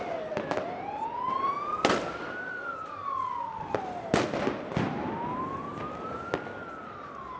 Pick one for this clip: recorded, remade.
recorded